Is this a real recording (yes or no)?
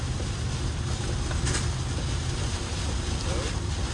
yes